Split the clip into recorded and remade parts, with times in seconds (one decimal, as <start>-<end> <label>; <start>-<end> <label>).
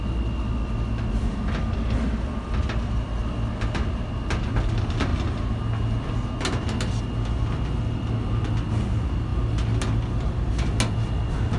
0.0-11.6 recorded